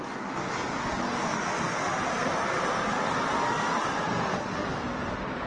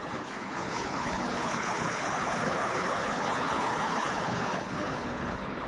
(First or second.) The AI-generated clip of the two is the second